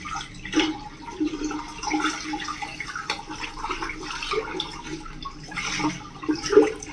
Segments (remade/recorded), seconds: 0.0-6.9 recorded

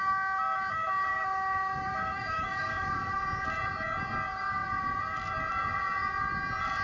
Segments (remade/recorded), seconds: 0.0-1.1 recorded; 1.1-3.2 remade; 3.2-6.8 recorded

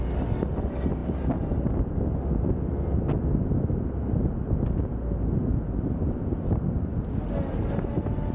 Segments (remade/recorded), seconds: 0.0-8.3 recorded

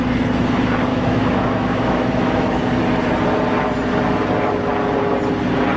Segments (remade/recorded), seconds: 0.0-0.9 recorded; 0.9-2.8 remade; 2.8-5.8 recorded

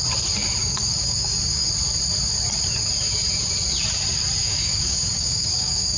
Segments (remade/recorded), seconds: 0.0-0.6 recorded; 0.6-1.7 remade; 1.7-4.4 recorded; 4.4-6.0 remade

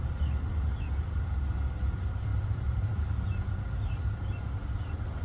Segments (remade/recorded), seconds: 0.0-2.3 recorded; 2.3-3.1 remade; 3.1-5.2 recorded

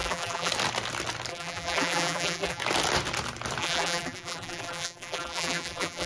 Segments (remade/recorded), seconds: 0.0-0.5 remade; 0.5-1.3 recorded; 1.3-2.6 remade; 2.6-3.6 recorded; 3.6-6.1 remade

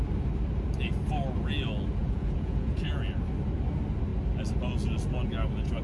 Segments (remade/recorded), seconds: 0.0-2.0 recorded; 2.0-2.9 remade; 2.9-5.8 recorded